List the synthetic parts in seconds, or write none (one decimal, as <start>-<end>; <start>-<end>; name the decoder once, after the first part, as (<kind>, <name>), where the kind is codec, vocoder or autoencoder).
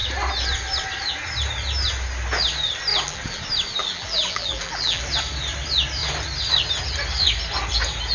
2.9-3.4 (vocoder, BigVGAN v2); 3.8-5.0